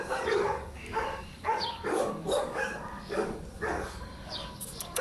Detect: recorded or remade remade